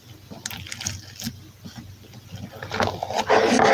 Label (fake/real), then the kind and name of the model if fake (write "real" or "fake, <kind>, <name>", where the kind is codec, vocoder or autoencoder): real